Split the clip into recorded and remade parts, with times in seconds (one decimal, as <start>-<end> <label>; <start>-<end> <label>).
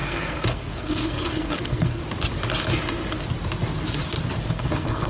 0.0-2.0 remade; 2.0-4.5 recorded; 4.5-5.1 remade